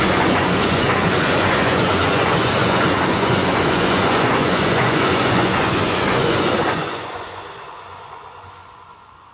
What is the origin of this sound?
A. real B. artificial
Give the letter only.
B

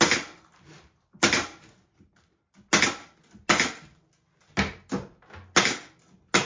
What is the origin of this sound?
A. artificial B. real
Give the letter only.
B